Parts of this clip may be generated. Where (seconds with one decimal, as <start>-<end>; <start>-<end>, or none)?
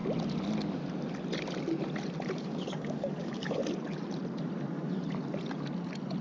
2.3-3.6